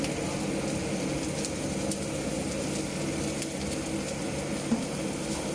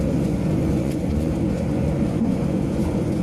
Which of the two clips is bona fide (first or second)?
first